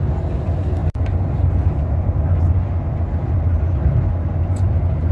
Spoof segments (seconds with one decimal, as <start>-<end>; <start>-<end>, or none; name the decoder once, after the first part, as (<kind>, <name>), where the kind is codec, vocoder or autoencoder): none